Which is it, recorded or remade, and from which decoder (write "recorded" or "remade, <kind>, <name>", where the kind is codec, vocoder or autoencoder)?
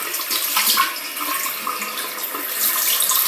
recorded